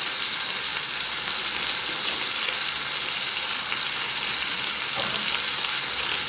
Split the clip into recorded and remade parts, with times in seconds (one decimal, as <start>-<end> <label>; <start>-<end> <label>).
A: 0.0-6.3 recorded